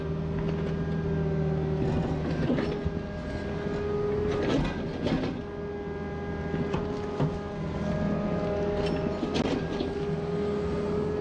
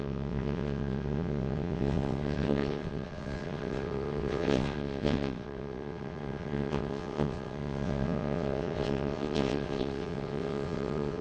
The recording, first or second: first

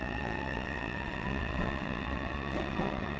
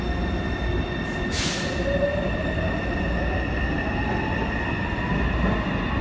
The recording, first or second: second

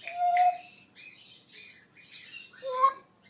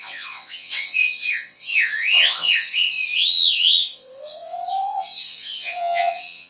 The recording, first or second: first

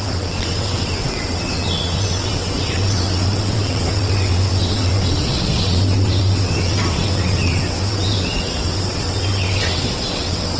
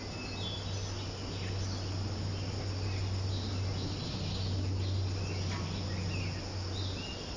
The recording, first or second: second